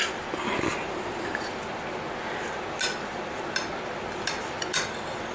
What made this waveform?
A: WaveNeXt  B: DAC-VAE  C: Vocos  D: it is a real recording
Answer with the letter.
D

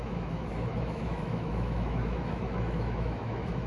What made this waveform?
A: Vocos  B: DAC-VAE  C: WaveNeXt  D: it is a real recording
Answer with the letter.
B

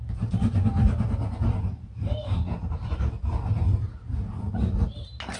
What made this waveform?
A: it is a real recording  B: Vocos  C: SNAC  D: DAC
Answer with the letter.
A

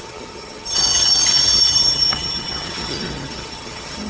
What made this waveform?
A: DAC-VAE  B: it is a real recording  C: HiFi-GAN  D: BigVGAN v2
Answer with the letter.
C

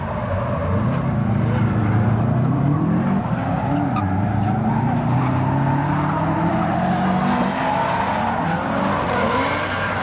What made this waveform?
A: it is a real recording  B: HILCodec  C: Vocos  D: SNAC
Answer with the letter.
A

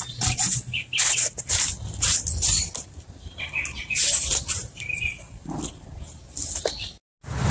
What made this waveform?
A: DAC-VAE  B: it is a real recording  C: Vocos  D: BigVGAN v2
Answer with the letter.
B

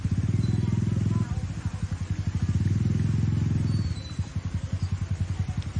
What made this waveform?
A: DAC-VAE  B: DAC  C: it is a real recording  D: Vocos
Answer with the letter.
C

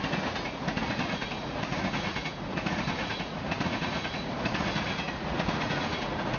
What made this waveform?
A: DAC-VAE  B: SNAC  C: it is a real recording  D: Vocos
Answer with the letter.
D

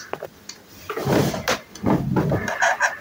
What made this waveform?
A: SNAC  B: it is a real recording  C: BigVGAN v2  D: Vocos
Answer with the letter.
B